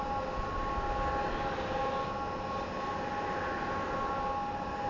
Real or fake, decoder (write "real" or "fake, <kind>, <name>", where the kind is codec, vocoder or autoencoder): real